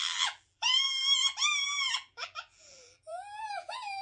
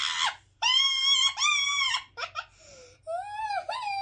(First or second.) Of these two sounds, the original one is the second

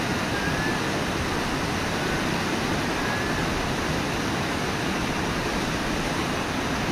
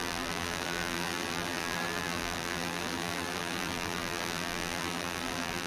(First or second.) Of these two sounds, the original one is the first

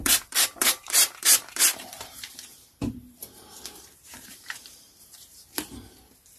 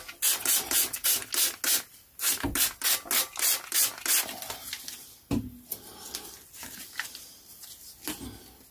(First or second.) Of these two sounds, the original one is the second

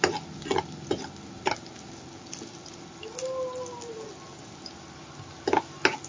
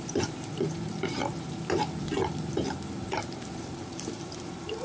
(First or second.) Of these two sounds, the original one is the first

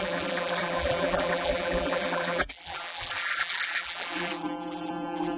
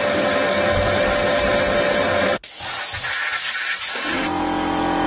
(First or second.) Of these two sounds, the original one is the second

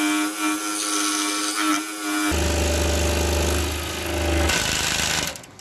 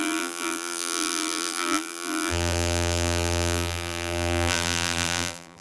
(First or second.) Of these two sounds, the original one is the first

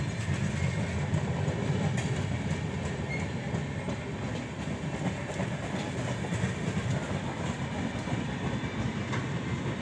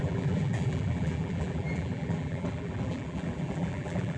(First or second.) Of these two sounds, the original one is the first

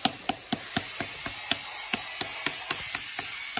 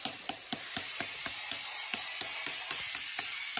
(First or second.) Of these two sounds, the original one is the first